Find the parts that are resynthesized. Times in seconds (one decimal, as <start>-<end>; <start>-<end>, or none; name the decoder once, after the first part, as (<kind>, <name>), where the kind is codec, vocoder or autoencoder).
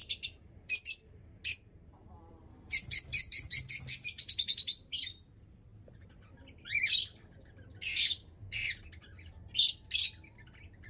0.0-1.1 (vocoder, BigVGAN v2); 1.8-5.3; 5.7-9.5